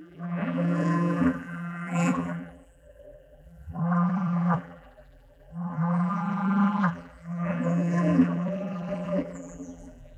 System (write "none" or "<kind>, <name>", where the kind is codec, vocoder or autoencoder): vocoder, BigVGAN v2